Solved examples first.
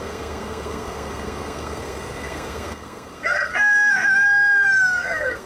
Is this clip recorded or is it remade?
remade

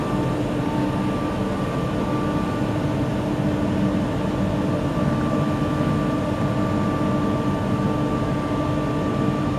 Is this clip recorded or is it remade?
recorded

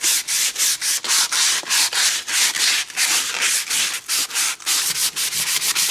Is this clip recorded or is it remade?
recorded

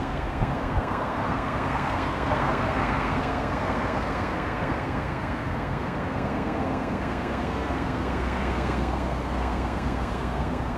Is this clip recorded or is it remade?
remade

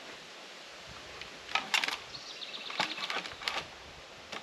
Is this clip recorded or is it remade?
recorded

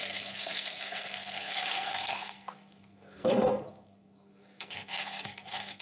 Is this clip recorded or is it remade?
remade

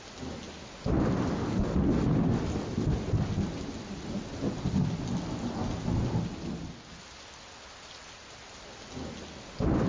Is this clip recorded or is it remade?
recorded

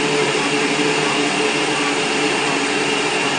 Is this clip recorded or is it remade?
recorded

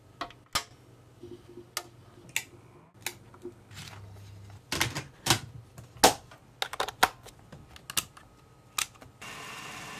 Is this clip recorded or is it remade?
recorded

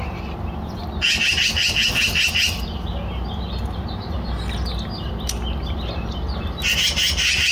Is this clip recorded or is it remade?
recorded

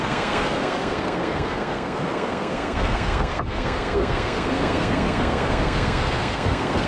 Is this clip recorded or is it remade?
remade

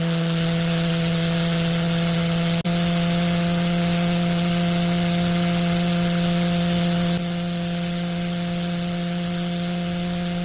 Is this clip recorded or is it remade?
recorded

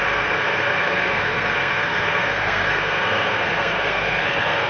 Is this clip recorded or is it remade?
remade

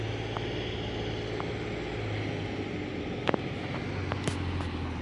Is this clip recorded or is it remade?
recorded